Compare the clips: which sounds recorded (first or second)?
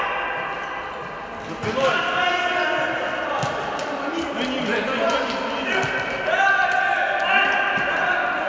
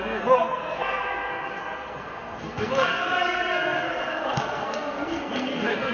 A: first